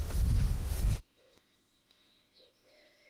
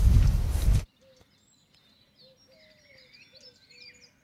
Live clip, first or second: second